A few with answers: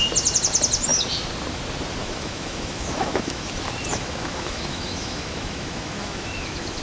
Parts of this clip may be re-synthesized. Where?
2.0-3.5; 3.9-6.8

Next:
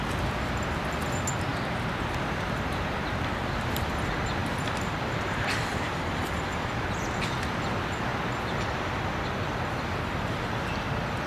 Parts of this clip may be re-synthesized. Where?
1.5-3.4; 4.4-6.9

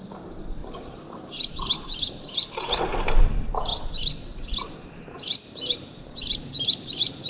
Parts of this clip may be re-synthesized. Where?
0.6-2.8; 3.7-7.3